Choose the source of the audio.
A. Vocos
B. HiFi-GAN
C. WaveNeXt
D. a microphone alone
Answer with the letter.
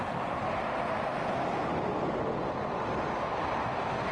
D